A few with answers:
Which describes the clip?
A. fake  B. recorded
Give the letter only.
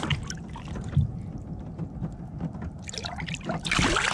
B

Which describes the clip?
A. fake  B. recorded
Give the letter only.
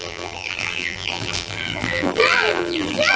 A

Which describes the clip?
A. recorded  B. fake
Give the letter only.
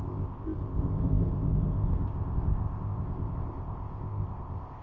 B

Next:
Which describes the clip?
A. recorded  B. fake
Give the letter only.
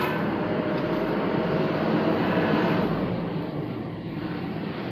B